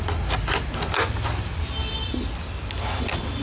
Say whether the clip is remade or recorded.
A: recorded